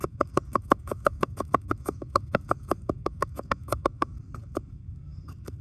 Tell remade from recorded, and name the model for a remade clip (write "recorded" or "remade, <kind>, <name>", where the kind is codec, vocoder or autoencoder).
remade, codec, SNAC